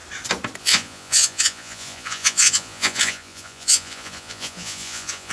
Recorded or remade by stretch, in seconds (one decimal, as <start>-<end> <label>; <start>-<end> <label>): 0.0-0.6 recorded; 0.6-5.3 remade